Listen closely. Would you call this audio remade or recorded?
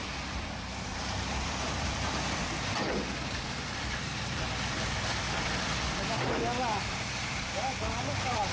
remade